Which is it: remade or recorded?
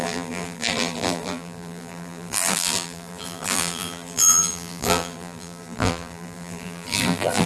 remade